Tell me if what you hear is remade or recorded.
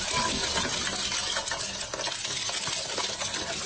recorded